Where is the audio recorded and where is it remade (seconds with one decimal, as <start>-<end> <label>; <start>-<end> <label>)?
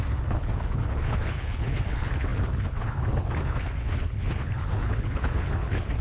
0.0-6.0 remade